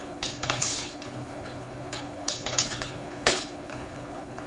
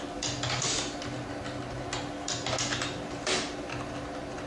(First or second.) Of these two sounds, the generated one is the first